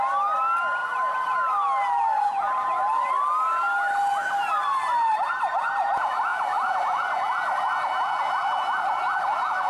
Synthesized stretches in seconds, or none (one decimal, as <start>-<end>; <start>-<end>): none